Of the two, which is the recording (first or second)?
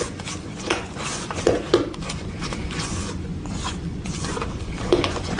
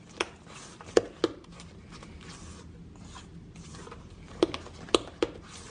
second